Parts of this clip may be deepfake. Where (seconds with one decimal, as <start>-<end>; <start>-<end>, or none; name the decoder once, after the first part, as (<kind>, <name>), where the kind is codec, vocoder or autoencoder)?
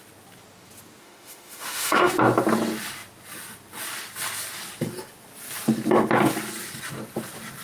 1.0-2.1 (autoencoder, DAC-VAE)